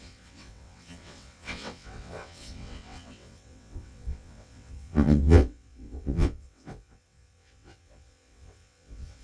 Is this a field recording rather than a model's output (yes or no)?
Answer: no